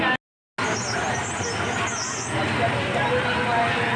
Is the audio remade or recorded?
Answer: recorded